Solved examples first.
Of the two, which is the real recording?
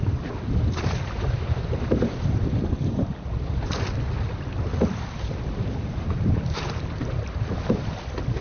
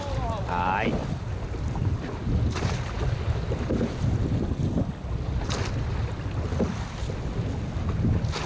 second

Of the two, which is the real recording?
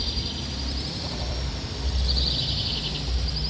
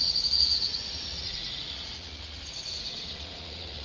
first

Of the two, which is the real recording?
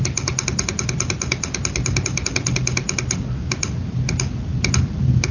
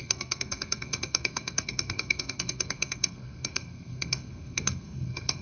first